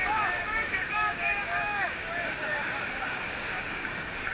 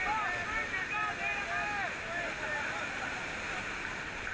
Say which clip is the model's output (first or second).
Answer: first